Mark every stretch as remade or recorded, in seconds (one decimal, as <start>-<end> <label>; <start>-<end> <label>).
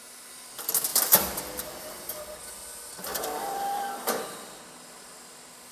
0.0-0.9 recorded; 0.9-2.2 remade; 2.2-3.1 recorded; 3.1-4.6 remade; 4.6-5.7 recorded